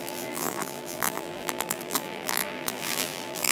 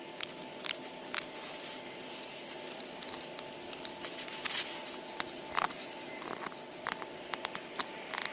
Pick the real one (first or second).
second